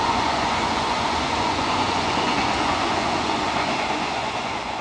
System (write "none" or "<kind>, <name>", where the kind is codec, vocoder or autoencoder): vocoder, Vocos